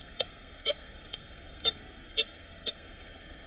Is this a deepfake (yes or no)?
yes